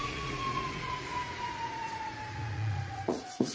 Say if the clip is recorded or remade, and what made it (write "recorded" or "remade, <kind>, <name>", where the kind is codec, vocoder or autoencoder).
remade, vocoder, Vocos